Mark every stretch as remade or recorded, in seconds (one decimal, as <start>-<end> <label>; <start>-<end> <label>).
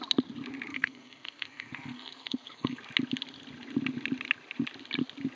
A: 0.0-0.7 recorded; 0.7-2.8 remade; 2.8-5.3 recorded